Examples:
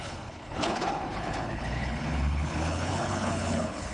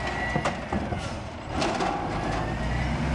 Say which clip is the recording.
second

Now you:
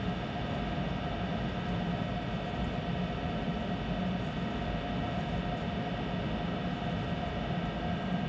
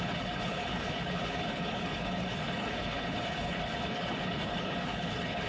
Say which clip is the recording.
first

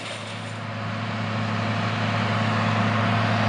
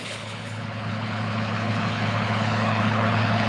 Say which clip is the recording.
first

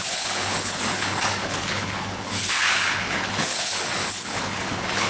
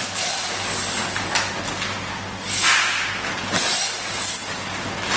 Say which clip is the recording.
second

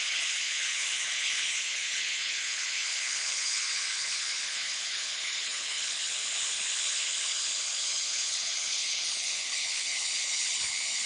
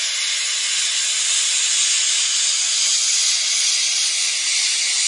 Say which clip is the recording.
second